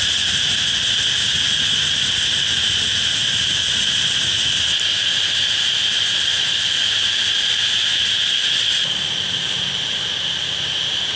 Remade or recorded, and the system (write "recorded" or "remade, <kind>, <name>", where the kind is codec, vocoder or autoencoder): recorded